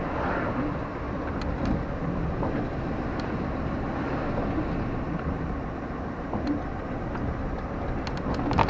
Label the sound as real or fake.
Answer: real